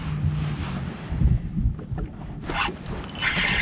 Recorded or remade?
recorded